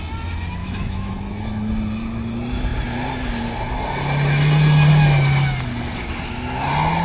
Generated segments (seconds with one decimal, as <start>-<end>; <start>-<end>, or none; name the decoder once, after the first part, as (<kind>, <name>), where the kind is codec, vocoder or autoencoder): 0.6-1.1 (autoencoder, DAC-VAE)